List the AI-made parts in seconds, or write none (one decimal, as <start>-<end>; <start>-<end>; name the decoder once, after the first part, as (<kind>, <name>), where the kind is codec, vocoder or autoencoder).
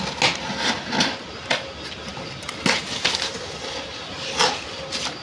none